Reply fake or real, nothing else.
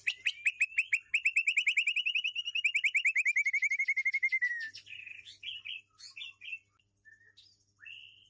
real